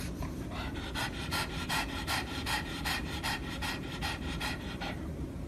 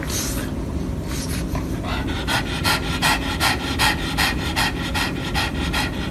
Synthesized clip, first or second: first